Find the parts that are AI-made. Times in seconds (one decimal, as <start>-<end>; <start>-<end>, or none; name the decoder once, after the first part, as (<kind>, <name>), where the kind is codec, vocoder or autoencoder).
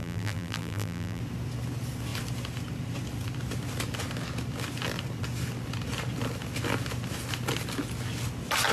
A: 0.0-1.2 (vocoder, BigVGAN v2)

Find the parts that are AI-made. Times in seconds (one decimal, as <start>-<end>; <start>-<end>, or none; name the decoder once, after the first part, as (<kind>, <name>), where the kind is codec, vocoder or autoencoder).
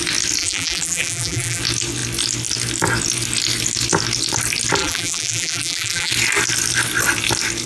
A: 0.4-1.6 (vocoder, BigVGAN v2); 4.8-6.1